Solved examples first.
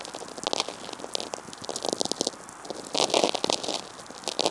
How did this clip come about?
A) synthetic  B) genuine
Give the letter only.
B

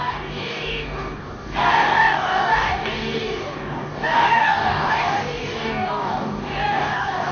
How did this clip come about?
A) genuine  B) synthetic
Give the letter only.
B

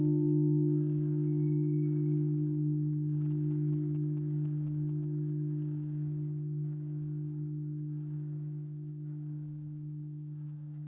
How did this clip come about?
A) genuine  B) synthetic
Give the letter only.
B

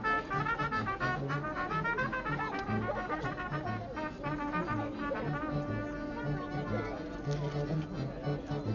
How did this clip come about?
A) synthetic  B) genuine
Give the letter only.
B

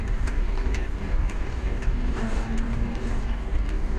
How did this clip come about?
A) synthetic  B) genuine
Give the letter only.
A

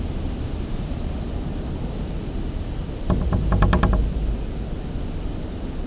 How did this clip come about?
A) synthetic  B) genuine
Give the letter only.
B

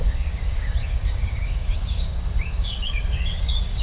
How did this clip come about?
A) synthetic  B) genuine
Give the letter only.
A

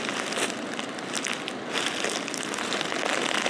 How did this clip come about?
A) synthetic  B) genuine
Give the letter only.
B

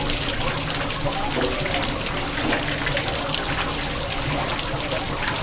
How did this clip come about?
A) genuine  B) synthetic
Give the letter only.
A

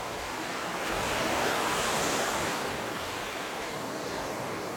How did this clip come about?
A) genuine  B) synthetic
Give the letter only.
B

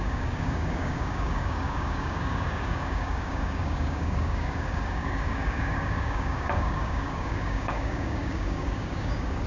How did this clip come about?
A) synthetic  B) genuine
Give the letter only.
A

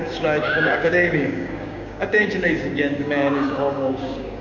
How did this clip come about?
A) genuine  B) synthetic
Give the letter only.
B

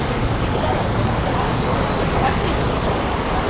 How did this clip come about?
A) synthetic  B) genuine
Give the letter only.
A